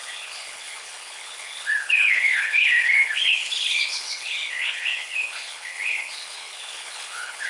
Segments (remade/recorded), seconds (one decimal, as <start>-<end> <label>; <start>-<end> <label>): 0.0-7.5 remade